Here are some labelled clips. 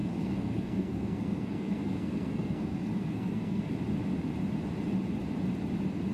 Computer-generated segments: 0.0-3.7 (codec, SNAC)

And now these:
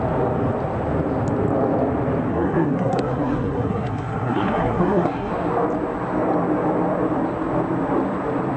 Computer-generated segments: 2.3-5.3 (codec, SNAC)